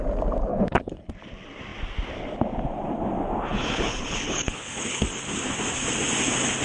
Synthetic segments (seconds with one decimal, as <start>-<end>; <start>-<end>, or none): 0.5-1.1; 3.5-5.0